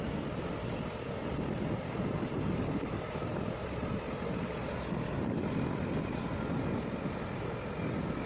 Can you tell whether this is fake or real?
real